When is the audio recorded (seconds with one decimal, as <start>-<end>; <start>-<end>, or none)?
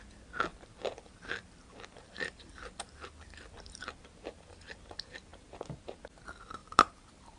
0.0-0.5; 4.5-6.6